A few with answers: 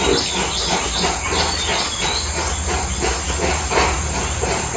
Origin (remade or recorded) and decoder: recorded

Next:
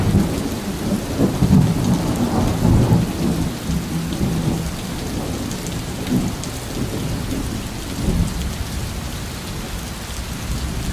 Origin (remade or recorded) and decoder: recorded